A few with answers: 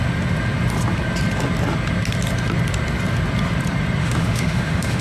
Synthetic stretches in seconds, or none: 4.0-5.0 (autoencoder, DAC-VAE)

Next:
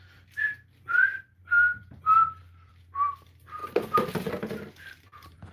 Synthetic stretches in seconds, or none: none

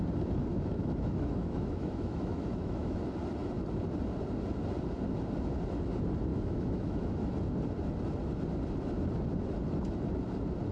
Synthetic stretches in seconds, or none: 0.5-3.0 (autoencoder, DAC-VAE); 6.3-7.3